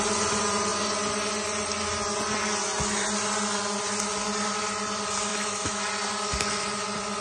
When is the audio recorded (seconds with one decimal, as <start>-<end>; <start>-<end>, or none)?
0.0-5.3; 5.8-7.2